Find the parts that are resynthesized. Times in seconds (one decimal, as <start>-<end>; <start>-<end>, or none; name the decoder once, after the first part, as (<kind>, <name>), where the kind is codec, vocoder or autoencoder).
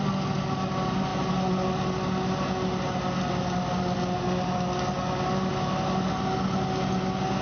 none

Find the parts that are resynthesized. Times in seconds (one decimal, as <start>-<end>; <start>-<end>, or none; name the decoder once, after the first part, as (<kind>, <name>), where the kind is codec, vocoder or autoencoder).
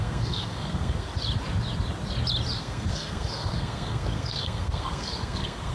0.0-1.1 (codec, SNAC); 2.6-5.7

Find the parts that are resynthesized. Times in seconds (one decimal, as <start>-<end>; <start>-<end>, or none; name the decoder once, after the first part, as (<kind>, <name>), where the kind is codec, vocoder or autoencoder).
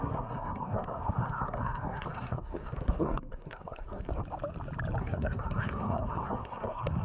0.0-4.1 (codec, SNAC); 5.0-7.0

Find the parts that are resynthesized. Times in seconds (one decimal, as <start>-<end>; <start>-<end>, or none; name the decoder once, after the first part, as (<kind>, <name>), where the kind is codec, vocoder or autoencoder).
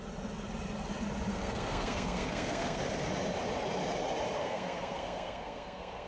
1.3-2.8 (codec, SNAC); 4.4-6.1